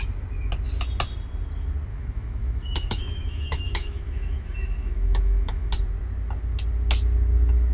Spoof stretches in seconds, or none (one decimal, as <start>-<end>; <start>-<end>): 1.9-5.7